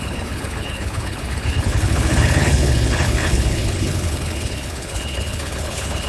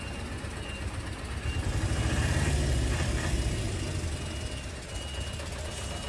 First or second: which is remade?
first